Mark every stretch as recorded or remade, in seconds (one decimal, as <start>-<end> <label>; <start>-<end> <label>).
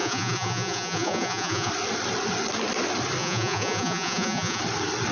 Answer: 0.0-1.7 remade; 1.7-3.2 recorded; 3.2-4.6 remade; 4.6-5.1 recorded